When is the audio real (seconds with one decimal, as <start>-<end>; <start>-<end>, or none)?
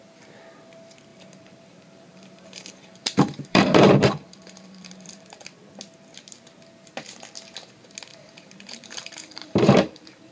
0.0-1.1; 5.3-8.1